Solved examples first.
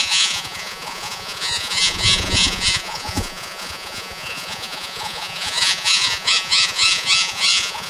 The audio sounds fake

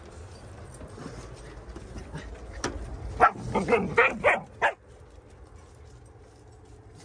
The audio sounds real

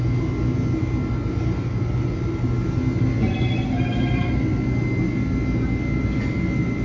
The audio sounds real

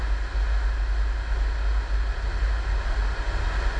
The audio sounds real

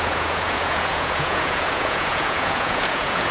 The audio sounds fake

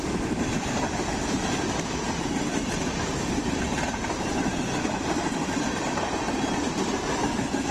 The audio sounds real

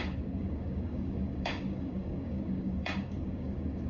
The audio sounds fake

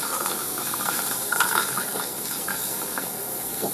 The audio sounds fake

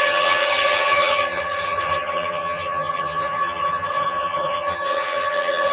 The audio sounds fake